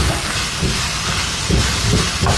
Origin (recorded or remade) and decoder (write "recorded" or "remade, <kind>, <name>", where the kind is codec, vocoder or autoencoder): recorded